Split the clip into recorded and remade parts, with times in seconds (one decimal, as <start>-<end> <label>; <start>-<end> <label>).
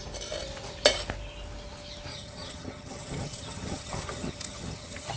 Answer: 0.0-2.1 recorded; 2.1-5.2 remade